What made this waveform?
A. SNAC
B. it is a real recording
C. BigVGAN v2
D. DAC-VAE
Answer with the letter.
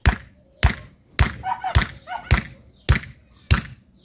B